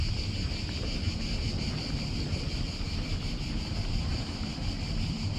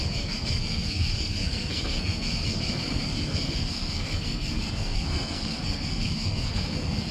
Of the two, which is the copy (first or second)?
second